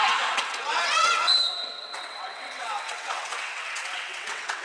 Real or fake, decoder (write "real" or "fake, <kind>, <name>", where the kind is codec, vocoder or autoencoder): fake, vocoder, WaveNeXt